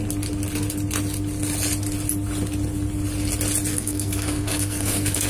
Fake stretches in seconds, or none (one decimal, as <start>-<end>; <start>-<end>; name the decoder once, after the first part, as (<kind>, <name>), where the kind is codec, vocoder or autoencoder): 3.7-5.3 (codec, SNAC)

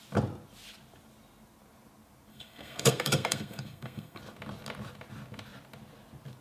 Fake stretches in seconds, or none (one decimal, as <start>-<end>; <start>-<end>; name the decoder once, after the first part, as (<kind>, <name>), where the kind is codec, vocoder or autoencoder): 2.3-4.2 (codec, SNAC)

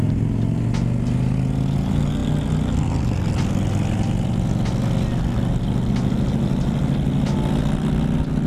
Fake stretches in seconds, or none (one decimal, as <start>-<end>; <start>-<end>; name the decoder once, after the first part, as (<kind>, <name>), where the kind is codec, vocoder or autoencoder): none

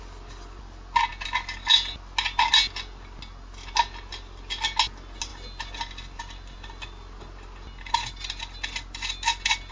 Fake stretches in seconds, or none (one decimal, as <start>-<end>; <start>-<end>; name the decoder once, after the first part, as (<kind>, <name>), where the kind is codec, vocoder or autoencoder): none

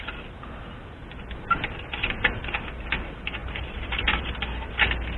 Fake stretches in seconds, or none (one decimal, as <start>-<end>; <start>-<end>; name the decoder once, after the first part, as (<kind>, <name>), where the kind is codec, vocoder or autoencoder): 3.4-4.3 (vocoder, BigVGAN v2)

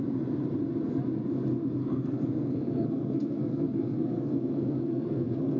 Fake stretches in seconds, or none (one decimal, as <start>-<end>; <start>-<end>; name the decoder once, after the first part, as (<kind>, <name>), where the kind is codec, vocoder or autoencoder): 1.8-5.6 (codec, SNAC)

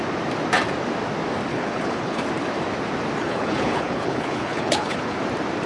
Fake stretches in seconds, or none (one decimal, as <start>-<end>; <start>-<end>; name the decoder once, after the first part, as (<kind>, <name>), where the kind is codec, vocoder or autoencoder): 1.5-2.2 (codec, HILCodec); 3.2-5.2

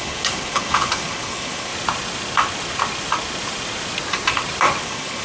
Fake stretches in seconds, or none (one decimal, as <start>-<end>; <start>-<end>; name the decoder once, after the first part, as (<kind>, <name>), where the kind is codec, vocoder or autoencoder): 0.0-1.7 (codec, HILCodec); 4.8-5.2